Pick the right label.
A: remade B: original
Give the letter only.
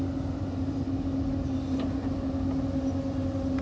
B